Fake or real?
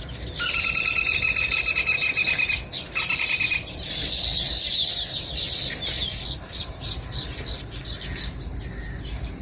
real